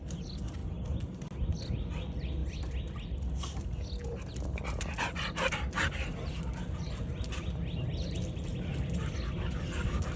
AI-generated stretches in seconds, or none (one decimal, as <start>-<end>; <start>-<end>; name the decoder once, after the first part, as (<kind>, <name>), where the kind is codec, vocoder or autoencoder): none